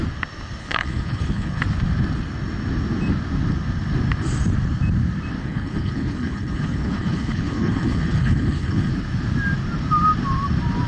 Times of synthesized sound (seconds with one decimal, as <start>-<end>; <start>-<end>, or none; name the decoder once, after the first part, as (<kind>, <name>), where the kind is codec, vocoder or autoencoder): 0.6-1.6 (codec, HILCodec); 5.4-8.9